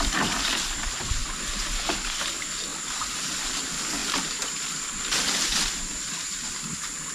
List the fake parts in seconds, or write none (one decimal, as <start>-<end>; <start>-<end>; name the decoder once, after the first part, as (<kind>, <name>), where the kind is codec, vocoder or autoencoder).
none